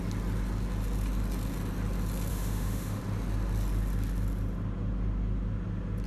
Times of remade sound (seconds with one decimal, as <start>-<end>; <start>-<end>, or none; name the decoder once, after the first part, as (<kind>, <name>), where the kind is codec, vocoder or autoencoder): 2.3-3.0 (autoencoder, DAC-VAE)